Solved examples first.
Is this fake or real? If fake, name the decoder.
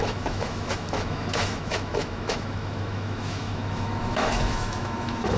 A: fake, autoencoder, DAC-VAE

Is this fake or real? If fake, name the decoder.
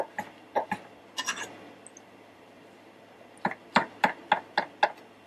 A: real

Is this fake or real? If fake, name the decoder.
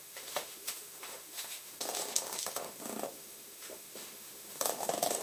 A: fake, autoencoder, DAC-VAE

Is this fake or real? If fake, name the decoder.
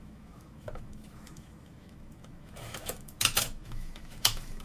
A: fake, autoencoder, DAC-VAE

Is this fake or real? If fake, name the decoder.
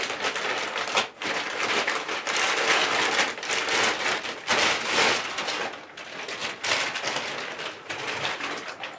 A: real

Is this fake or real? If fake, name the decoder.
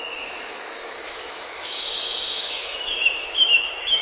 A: fake, autoencoder, DAC-VAE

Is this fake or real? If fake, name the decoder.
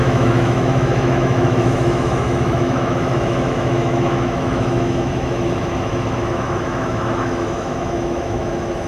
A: fake, autoencoder, DAC-VAE